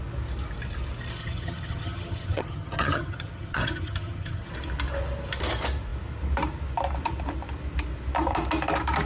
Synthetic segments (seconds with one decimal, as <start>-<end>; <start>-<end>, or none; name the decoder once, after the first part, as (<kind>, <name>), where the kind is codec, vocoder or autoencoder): 1.2-4.5 (vocoder, HiFi-GAN)